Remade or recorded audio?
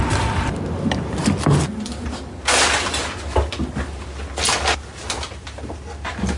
recorded